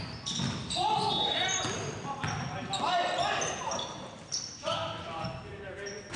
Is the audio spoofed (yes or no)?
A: no